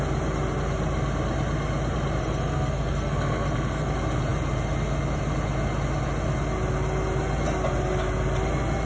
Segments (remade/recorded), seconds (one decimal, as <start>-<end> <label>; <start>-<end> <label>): 0.0-2.2 recorded; 2.2-3.9 remade; 3.9-8.9 recorded